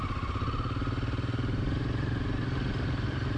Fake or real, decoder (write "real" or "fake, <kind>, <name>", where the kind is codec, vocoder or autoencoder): real